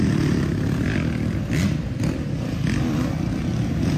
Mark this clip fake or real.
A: real